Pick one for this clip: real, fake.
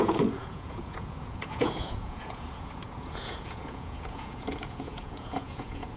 fake